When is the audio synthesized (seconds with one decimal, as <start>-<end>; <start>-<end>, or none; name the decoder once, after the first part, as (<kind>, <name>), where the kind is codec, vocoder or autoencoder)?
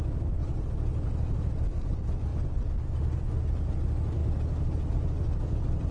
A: none